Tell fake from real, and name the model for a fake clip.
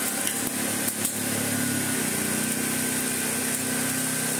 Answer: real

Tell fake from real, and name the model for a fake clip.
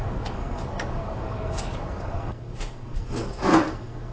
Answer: fake, codec, SNAC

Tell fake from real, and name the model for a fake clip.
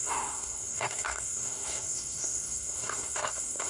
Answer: fake, codec, SNAC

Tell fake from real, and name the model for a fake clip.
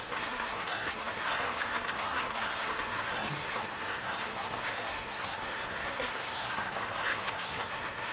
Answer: fake, codec, SNAC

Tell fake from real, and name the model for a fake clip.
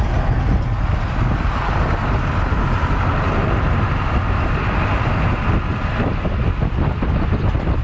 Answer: real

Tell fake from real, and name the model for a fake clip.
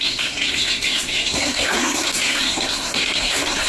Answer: fake, codec, SNAC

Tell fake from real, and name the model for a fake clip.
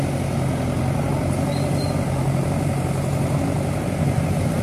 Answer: real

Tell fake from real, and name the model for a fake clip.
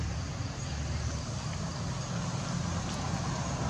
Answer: real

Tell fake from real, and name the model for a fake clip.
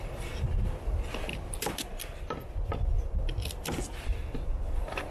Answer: real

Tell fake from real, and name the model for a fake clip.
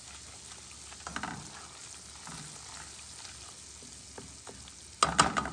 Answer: real